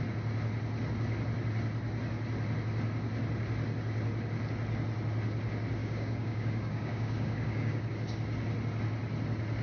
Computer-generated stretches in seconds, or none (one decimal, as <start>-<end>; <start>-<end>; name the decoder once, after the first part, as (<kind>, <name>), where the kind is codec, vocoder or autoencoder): 5.8-7.9 (codec, DAC)